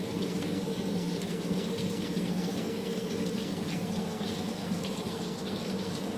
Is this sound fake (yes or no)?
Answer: yes